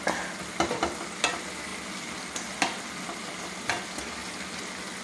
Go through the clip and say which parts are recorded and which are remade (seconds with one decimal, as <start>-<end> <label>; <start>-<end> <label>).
0.0-5.0 recorded